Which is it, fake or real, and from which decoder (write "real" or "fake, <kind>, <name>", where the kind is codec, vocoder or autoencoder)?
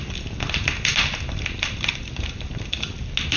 real